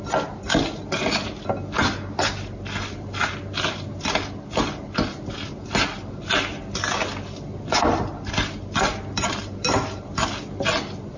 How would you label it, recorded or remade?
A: recorded